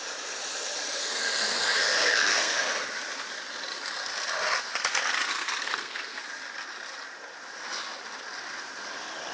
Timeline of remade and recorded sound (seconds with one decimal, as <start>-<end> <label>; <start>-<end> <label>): 0.0-1.0 recorded; 1.0-2.9 remade; 2.9-5.3 recorded; 5.3-6.2 remade; 6.2-9.3 recorded